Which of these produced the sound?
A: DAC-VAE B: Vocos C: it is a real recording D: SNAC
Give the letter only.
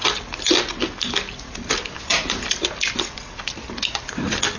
C